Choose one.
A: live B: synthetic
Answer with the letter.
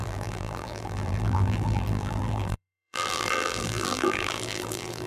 B